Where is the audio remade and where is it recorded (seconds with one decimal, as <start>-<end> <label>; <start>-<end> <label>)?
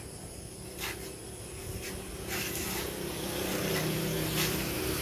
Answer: 0.0-5.0 recorded